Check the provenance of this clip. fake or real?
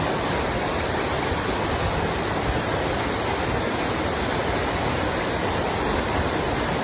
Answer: real